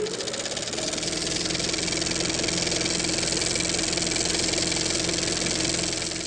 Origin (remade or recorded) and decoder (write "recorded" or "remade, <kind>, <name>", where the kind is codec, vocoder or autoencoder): recorded